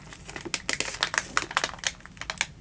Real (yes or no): yes